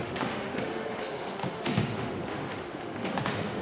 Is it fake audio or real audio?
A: fake